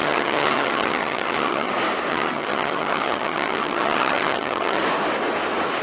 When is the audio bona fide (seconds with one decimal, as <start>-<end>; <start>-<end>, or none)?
1.7-2.1; 4.8-5.8